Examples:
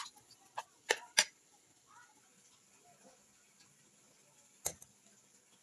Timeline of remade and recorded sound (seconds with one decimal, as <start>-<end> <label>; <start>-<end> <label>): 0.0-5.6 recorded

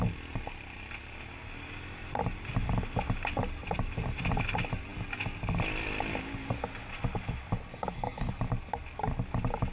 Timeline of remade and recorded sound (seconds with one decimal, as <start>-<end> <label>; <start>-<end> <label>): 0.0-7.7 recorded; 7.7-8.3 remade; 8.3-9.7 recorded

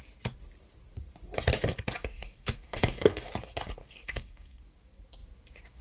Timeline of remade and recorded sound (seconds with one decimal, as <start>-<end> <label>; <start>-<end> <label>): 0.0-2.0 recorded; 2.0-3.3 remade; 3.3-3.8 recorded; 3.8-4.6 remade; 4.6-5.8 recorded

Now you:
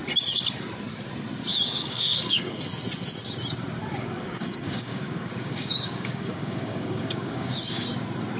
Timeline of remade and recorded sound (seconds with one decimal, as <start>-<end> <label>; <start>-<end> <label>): 0.0-1.5 recorded; 1.5-2.6 remade; 2.6-3.9 recorded; 3.9-7.9 remade; 7.9-8.4 recorded

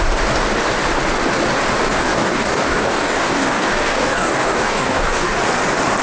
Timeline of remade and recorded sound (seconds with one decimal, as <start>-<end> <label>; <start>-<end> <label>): 0.0-1.8 recorded; 1.8-5.4 remade; 5.4-6.0 recorded

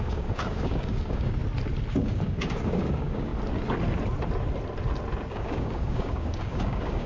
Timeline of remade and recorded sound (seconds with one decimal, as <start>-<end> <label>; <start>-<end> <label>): 0.0-1.4 remade; 1.4-1.9 recorded; 1.9-3.3 remade; 3.3-5.3 recorded; 5.3-7.1 remade

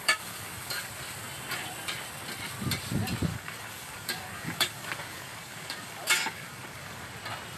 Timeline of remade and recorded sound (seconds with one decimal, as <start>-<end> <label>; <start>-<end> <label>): 0.0-0.8 remade; 0.8-3.3 recorded; 3.3-7.1 remade; 7.1-7.6 recorded